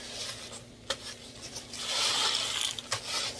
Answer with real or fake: real